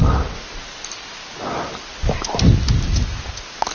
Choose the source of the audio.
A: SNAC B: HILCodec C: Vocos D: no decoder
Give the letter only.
D